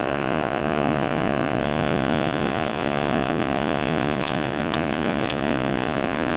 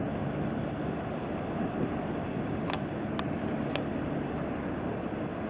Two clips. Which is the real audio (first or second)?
second